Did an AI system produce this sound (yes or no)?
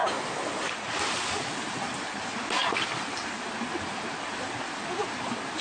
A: no